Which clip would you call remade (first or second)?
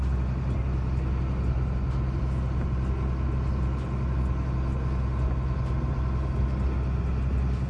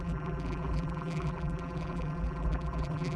second